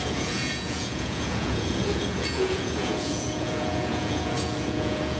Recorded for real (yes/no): no